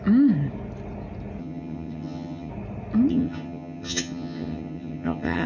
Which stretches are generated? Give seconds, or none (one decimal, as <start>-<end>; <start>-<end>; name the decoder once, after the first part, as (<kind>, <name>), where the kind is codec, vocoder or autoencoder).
1.4-2.5 (vocoder, HiFi-GAN); 3.1-5.5